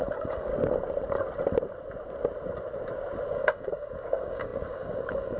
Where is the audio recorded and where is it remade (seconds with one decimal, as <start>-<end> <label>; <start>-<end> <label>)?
0.0-0.5 remade; 0.5-3.3 recorded; 3.3-5.4 remade

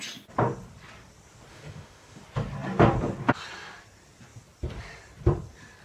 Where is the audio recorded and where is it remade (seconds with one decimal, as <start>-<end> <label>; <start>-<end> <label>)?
0.0-1.5 recorded; 1.5-2.2 remade; 2.2-5.8 recorded

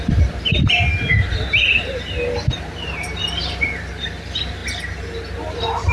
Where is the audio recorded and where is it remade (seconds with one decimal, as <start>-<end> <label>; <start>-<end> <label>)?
0.0-4.6 remade; 4.6-5.5 recorded; 5.5-5.9 remade

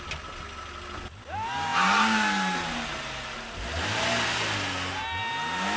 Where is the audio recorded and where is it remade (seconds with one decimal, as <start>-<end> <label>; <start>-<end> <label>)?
0.0-5.8 recorded